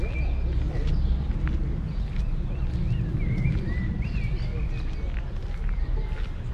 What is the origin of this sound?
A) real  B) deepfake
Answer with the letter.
A